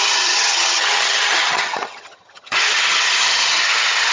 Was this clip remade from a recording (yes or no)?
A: yes